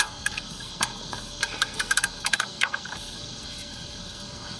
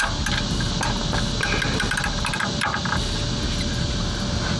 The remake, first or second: first